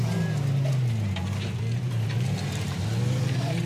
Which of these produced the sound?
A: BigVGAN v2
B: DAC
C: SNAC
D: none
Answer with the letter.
D